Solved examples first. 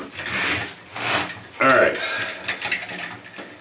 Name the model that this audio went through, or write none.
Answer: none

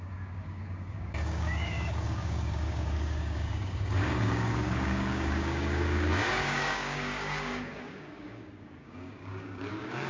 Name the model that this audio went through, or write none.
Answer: codec, DAC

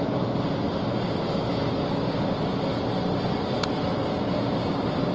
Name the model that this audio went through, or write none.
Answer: none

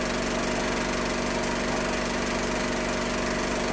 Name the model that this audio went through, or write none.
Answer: none